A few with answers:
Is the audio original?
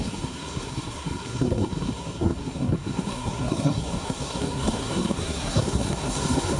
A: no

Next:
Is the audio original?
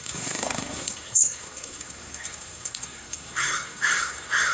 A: no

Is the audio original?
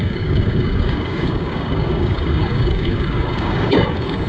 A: no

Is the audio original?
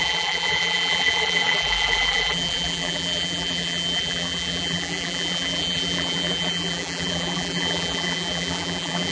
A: no